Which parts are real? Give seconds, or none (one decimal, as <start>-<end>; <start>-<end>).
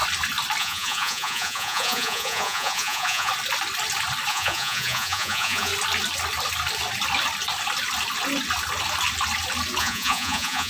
0.0-0.6; 3.3-4.3; 5.7-9.8